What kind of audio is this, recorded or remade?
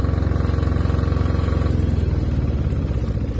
recorded